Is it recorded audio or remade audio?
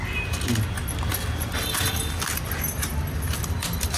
recorded